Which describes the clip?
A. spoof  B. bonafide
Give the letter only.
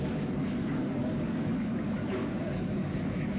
A